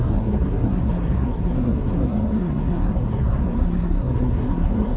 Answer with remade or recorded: remade